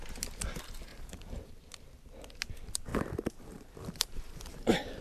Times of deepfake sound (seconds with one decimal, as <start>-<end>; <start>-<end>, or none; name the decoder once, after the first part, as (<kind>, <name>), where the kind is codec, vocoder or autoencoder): 0.9-1.5 (vocoder, BigVGAN v2); 2.9-5.0